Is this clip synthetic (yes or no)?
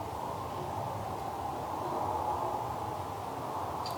no